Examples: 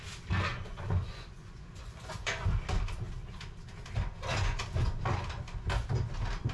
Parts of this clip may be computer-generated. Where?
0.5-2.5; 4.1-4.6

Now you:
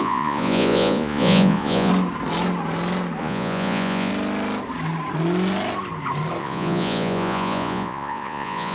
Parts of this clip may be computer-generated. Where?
0.0-1.9; 3.2-4.1; 6.4-8.7

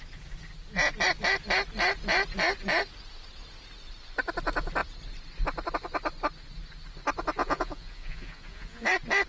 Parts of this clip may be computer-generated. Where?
7.4-8.9

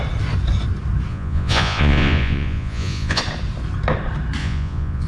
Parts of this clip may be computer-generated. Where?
1.1-3.2; 4.4-5.1

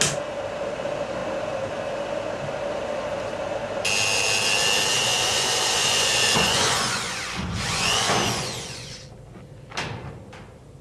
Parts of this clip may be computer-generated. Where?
5.0-9.0

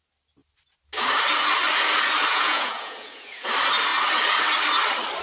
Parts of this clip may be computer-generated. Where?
2.3-3.5

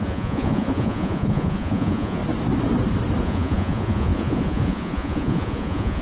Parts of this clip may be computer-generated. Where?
0.0-2.2; 3.2-6.0